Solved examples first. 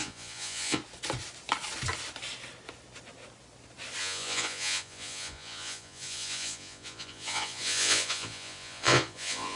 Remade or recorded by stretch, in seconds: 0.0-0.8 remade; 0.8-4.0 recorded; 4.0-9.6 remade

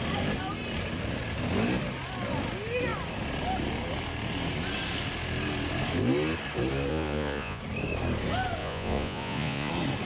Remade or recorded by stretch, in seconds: 0.0-6.9 recorded; 6.9-7.6 remade; 7.6-8.6 recorded; 8.6-9.7 remade; 9.7-10.1 recorded

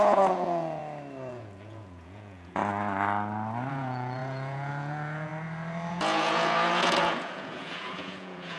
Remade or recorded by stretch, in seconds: 0.0-0.8 remade; 0.8-1.3 recorded; 1.3-2.6 remade; 2.6-3.7 recorded; 3.7-5.3 remade; 5.3-5.9 recorded; 5.9-8.6 remade

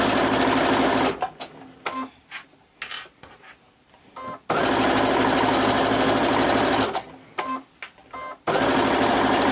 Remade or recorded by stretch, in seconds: 0.0-9.5 recorded